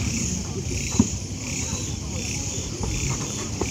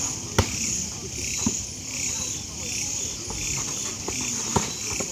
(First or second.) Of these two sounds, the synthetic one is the first